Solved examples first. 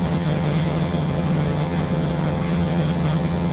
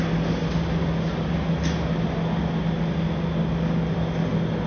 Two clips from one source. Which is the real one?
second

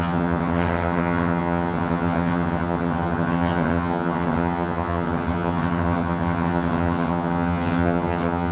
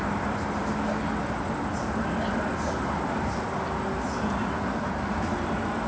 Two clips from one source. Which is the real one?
second